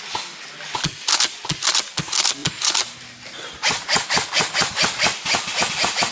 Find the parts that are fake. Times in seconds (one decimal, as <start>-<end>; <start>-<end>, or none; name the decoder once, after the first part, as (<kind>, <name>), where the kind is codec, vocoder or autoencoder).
2.4-3.0 (vocoder, BigVGAN v2)